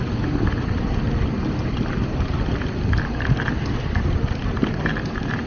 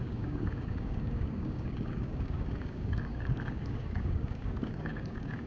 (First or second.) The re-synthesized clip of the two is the second